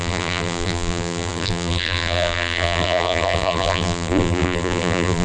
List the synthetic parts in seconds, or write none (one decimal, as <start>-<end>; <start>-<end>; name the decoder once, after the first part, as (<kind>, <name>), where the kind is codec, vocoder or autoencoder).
0.0-5.2 (vocoder, BigVGAN v2)